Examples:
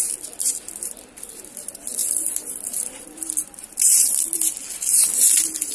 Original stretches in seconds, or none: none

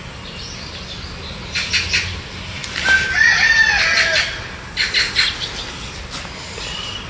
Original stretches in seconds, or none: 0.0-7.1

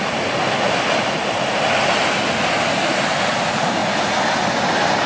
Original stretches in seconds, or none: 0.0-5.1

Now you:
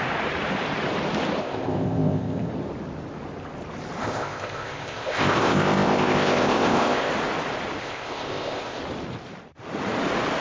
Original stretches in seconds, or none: 0.0-1.4; 2.5-4.0; 7.1-7.8; 8.8-10.4

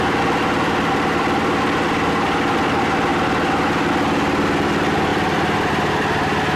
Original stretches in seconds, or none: 0.0-6.6

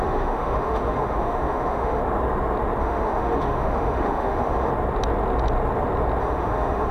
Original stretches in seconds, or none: 2.0-2.8; 4.7-6.2

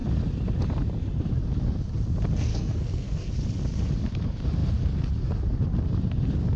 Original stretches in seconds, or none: 0.0-2.5; 3.3-6.6